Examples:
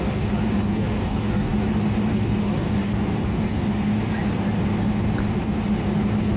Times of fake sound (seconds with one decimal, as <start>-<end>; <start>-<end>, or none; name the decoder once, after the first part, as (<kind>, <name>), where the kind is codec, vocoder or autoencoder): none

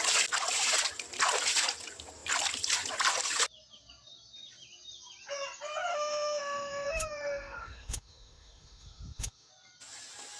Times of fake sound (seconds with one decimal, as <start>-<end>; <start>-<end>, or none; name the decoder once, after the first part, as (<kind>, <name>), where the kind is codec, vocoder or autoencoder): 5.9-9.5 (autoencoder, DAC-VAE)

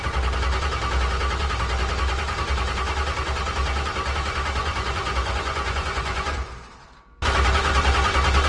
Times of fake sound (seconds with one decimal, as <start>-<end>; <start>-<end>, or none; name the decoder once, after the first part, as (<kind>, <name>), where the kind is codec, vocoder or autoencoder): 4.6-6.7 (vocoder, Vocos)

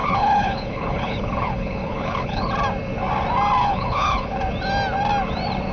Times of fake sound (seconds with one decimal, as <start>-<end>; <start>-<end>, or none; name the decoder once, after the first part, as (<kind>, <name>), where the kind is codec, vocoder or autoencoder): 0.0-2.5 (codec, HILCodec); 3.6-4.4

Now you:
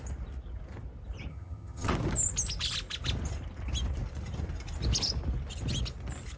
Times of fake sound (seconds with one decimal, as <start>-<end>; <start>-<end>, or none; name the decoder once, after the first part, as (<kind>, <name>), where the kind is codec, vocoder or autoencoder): 1.3-1.9 (vocoder, HiFi-GAN)

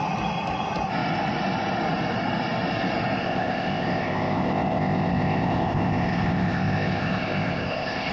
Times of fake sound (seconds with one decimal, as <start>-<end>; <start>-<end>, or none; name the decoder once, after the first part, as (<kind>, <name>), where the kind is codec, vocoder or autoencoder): 3.2-8.1 (codec, ZipCodec)

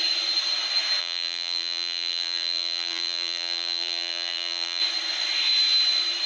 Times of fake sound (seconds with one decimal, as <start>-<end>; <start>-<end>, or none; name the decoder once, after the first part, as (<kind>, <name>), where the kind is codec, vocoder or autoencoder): 1.0-4.8 (vocoder, BigVGAN v2)